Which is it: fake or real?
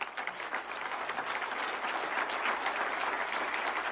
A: real